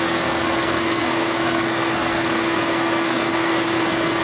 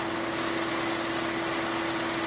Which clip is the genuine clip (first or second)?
second